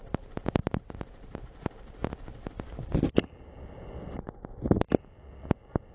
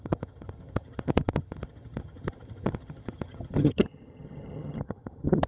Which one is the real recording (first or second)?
first